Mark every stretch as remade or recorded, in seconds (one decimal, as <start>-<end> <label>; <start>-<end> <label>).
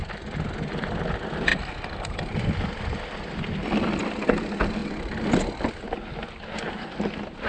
0.0-7.5 recorded